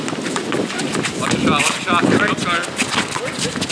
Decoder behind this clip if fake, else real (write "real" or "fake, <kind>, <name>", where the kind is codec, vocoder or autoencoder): real